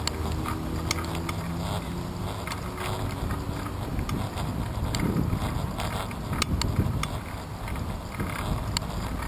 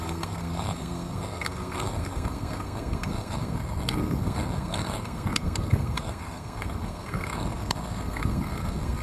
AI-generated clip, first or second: second